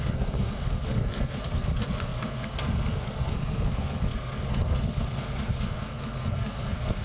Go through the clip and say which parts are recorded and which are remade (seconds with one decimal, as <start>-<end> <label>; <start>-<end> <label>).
0.0-7.0 remade

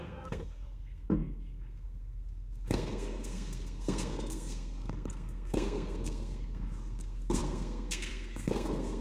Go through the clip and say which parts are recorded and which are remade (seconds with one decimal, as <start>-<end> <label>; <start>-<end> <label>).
0.0-9.0 remade

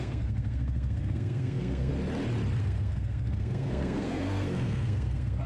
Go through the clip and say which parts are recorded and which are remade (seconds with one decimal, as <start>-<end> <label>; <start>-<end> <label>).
0.0-1.9 remade; 1.9-2.6 recorded; 2.6-5.5 remade

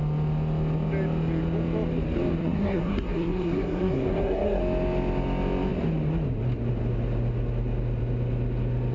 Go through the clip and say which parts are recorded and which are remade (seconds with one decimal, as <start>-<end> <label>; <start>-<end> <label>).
0.0-2.4 recorded; 2.4-4.6 remade; 4.6-8.9 recorded

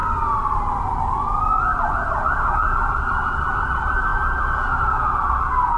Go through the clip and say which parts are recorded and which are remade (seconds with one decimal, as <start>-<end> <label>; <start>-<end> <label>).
0.0-5.8 recorded

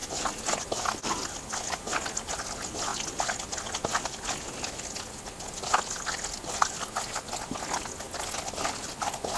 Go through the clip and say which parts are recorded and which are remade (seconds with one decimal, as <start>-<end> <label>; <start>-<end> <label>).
0.0-9.4 recorded

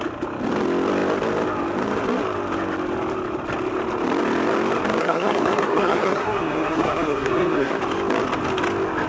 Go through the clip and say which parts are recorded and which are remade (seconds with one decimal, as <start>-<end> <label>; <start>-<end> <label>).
0.0-5.0 recorded; 5.0-7.8 remade; 7.8-9.1 recorded